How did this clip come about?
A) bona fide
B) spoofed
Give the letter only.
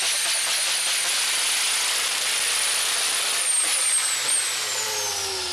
A